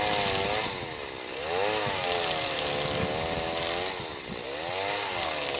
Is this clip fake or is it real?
real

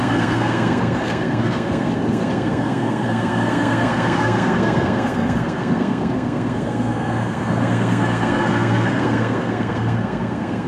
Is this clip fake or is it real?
fake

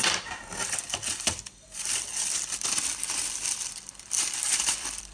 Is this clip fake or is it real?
fake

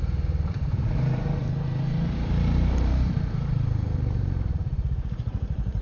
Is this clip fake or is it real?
fake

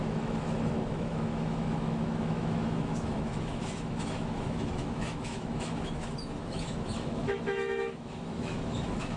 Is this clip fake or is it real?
fake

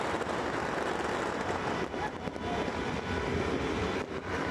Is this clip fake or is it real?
fake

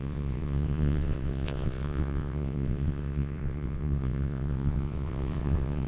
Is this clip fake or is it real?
fake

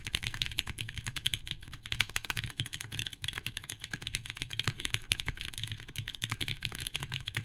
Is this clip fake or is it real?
fake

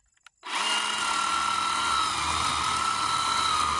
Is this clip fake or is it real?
real